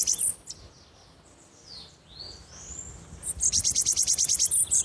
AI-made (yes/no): no